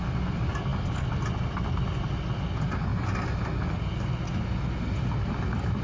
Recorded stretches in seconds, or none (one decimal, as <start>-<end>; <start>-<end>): 0.0-5.8